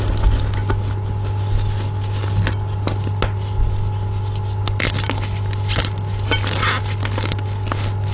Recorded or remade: recorded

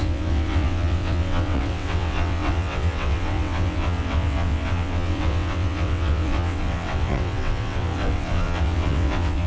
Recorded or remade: remade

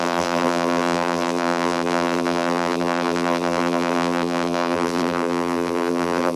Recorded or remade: remade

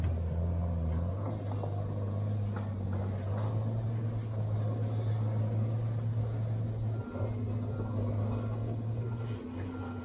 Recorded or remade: recorded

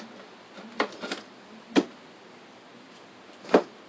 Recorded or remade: recorded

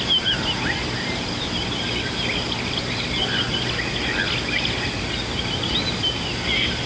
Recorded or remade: recorded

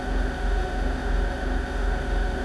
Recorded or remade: remade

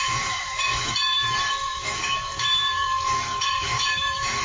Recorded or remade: remade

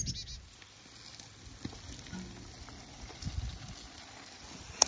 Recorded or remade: recorded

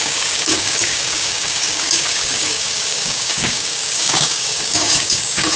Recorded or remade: remade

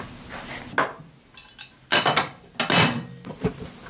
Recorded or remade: recorded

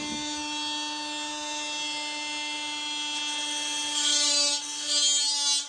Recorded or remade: recorded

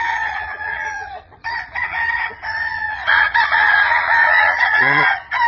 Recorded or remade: remade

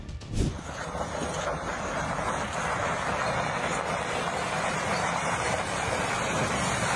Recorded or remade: remade